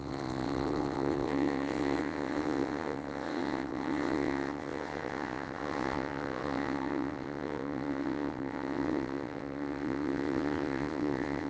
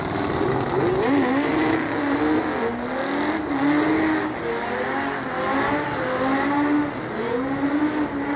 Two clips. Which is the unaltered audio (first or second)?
second